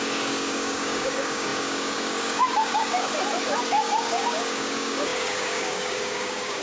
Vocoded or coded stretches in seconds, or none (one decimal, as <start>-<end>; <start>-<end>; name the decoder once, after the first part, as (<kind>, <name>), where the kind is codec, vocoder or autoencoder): 0.0-3.1 (codec, DAC); 3.6-6.6